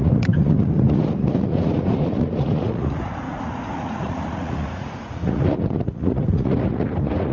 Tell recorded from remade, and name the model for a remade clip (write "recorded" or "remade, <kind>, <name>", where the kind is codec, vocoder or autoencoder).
remade, vocoder, Vocos